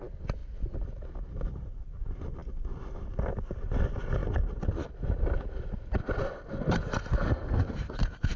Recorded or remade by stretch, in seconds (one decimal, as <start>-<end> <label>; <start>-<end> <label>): 0.0-0.4 recorded; 0.4-3.4 remade; 3.4-8.4 recorded